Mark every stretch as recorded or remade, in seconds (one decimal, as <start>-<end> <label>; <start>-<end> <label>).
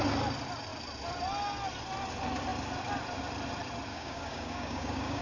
0.0-3.9 recorded; 3.9-5.2 remade